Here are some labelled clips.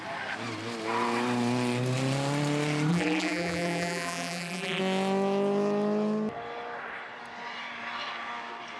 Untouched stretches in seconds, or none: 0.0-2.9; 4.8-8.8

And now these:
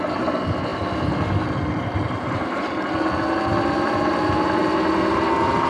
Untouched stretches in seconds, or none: 0.0-5.7

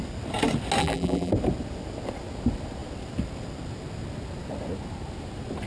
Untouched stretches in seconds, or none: 0.0-0.8; 1.3-5.7

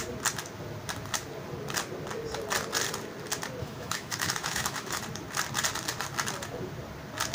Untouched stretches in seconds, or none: 0.0-3.6; 5.0-7.3

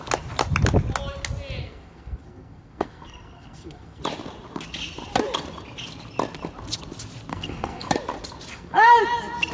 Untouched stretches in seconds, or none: 0.0-1.6; 4.0-7.3; 7.9-8.5; 9.0-9.5

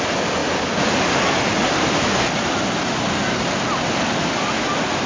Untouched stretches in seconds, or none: 0.0-5.1